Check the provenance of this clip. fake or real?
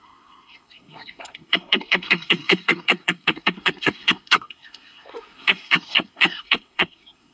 fake